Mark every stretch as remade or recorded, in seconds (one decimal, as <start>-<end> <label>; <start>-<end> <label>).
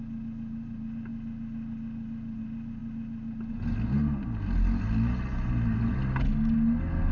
0.0-7.1 recorded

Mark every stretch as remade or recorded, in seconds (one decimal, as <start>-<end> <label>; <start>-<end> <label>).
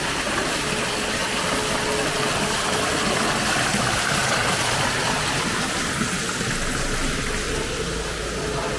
0.0-8.8 recorded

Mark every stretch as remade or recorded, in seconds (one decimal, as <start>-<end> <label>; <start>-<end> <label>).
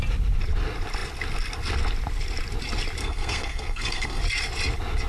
0.0-3.0 recorded; 3.0-4.2 remade; 4.2-5.1 recorded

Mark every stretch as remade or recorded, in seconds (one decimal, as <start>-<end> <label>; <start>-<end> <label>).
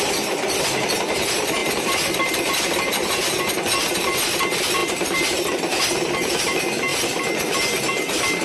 0.0-8.4 recorded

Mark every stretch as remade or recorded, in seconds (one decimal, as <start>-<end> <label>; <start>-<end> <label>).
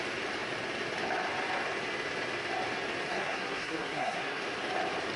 0.0-3.1 recorded; 3.1-4.4 remade; 4.4-5.2 recorded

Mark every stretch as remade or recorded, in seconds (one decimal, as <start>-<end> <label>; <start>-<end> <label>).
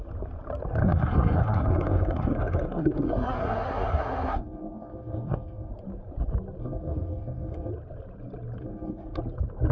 0.0-0.8 recorded; 0.8-5.7 remade; 5.7-6.6 recorded; 6.6-7.7 remade; 7.7-8.6 recorded; 8.6-9.2 remade; 9.2-9.7 recorded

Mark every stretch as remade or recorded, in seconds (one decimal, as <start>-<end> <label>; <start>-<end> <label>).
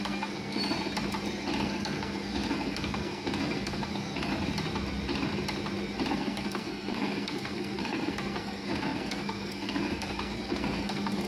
0.0-0.6 remade; 0.6-1.6 recorded; 1.6-4.3 remade; 4.3-6.1 recorded; 6.1-11.3 remade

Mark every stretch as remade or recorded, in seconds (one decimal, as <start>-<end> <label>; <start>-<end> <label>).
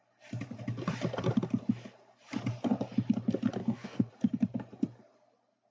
0.0-3.6 recorded; 3.6-4.1 remade; 4.1-5.7 recorded